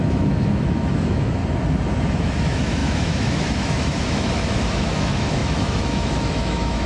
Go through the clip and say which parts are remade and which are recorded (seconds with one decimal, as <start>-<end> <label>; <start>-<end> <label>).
0.0-1.4 remade; 1.4-2.1 recorded; 2.1-6.9 remade